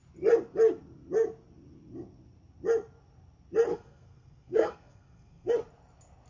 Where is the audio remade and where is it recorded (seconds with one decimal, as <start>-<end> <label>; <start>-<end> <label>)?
0.0-3.7 recorded; 3.7-5.5 remade; 5.5-6.3 recorded